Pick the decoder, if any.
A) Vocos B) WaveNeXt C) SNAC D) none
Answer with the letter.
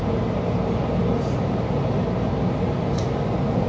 D